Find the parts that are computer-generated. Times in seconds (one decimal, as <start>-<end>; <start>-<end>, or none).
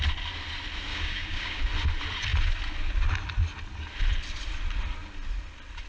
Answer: 0.9-1.6